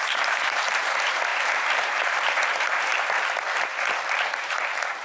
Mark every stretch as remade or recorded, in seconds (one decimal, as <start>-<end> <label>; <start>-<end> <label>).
0.0-2.9 remade; 2.9-3.6 recorded; 3.6-5.0 remade